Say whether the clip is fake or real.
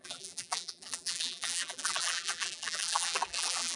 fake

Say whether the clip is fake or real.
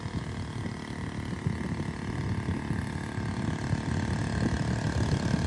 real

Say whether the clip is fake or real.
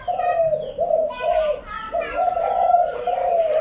real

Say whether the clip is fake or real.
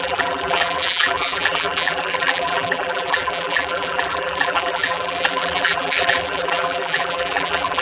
fake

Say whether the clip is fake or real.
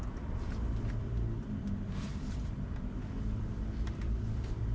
fake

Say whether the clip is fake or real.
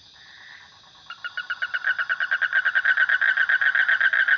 real